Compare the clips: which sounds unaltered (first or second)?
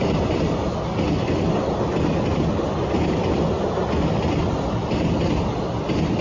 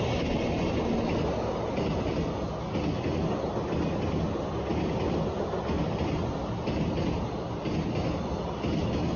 second